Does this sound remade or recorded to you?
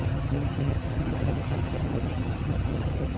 remade